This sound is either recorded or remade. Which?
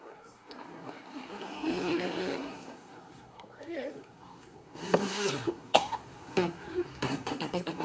remade